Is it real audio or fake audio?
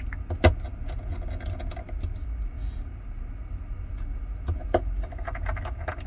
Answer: real